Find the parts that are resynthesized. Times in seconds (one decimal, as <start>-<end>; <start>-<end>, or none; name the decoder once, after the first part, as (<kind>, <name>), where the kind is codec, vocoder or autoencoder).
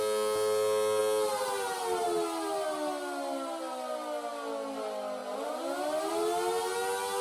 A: none